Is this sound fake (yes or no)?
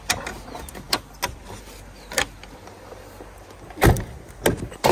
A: no